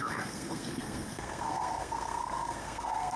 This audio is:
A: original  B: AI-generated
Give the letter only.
B